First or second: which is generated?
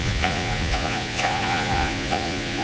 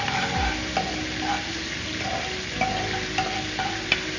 first